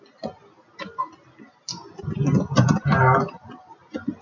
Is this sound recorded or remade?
recorded